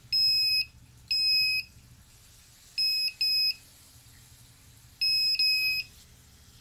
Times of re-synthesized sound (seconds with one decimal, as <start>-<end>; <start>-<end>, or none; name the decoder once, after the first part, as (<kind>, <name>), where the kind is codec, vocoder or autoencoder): none